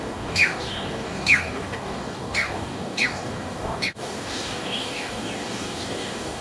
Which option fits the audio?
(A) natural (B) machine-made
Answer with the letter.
B